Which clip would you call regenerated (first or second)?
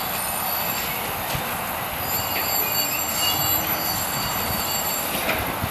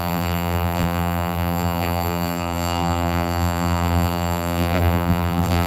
second